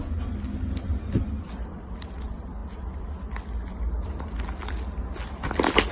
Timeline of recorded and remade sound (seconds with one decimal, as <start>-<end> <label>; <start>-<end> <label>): 0.0-5.9 recorded